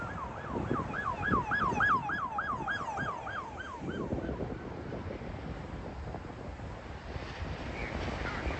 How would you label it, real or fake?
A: real